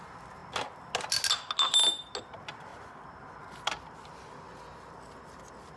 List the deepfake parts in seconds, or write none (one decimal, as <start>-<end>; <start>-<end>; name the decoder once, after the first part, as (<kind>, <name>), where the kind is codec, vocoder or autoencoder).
none